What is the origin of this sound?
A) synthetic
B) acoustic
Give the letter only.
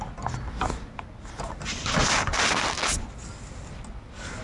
B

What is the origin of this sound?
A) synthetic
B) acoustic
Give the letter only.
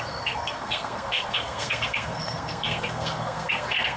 A